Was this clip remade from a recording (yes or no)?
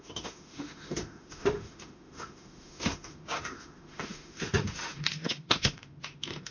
yes